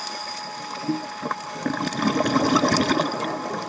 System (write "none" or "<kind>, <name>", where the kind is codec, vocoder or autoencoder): none